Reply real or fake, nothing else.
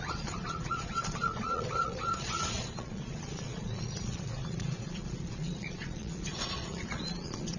fake